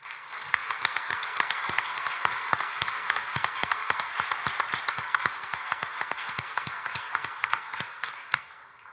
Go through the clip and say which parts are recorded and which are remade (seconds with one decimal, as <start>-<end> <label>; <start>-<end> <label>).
0.0-4.1 remade; 4.1-4.9 recorded; 4.9-8.9 remade